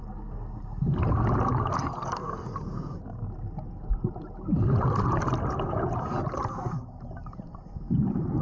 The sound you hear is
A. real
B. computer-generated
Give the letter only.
A